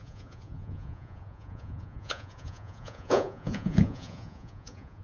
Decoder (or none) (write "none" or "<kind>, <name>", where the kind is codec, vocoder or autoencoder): vocoder, Vocos